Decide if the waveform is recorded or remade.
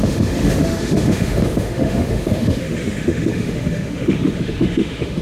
remade